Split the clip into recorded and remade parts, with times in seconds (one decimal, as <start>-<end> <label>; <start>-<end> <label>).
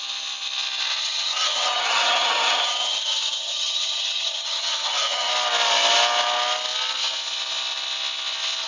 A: 0.0-1.0 recorded; 1.0-5.3 remade; 5.3-8.7 recorded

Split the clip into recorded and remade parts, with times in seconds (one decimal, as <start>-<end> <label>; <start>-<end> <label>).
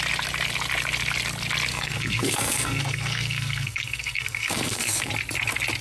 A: 0.0-1.7 recorded; 1.7-5.1 remade; 5.1-5.8 recorded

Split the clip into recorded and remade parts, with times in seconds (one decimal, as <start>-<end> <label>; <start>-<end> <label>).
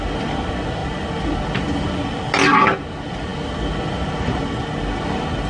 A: 0.0-5.5 recorded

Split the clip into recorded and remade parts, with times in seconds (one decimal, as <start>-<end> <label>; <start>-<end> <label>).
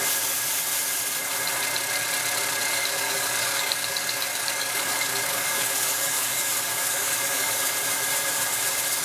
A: 0.0-2.6 recorded; 2.6-7.7 remade; 7.7-9.0 recorded